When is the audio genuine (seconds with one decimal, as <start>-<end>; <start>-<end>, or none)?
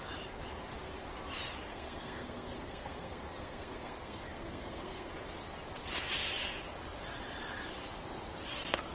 0.0-1.7; 5.1-8.9